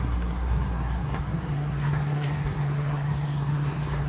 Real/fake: fake